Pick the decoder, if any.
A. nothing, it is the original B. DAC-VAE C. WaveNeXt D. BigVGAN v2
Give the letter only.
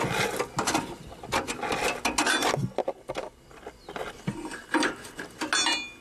A